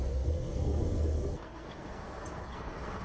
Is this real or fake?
fake